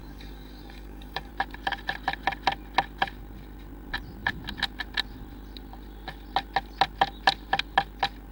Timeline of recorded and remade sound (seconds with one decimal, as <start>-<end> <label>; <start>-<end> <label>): 0.0-1.3 remade; 1.3-8.3 recorded